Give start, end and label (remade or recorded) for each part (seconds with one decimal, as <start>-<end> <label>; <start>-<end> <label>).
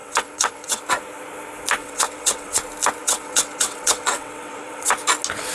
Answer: 0.0-0.8 remade; 0.8-1.8 recorded; 1.8-2.6 remade; 2.6-3.0 recorded; 3.0-4.9 remade; 4.9-5.5 recorded